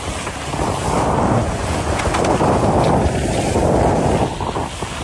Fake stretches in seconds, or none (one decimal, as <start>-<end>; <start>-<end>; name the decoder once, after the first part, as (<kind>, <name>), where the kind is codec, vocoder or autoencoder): 1.4-2.0 (vocoder, Vocos)